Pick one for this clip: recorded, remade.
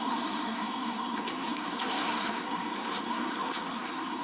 remade